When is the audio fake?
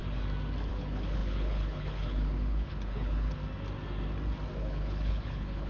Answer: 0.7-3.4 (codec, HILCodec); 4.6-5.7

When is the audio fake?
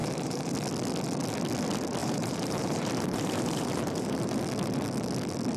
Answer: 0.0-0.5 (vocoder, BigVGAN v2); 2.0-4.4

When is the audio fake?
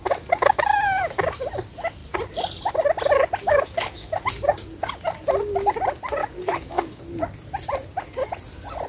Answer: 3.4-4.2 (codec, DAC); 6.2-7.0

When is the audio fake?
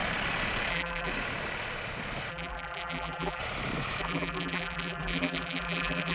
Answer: 0.7-1.1 (vocoder, BigVGAN v2); 2.3-3.4; 4.0-6.1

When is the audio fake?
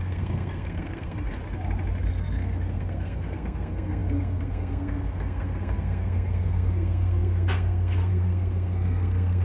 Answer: 0.0-1.4 (codec, SNAC); 2.1-9.4